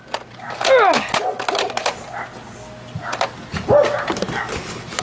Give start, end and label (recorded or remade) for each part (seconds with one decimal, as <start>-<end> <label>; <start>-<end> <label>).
0.0-5.0 recorded